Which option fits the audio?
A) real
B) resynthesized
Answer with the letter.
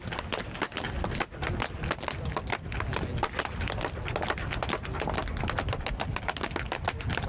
A